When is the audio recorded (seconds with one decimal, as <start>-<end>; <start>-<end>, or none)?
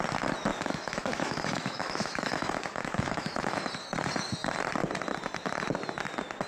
0.0-0.5; 3.6-6.5